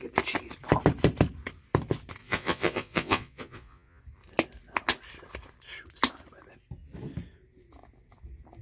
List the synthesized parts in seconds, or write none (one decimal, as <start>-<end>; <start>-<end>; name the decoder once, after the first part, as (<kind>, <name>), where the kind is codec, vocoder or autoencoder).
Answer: 2.2-4.0 (vocoder, Vocos)